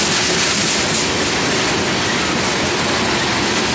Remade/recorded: recorded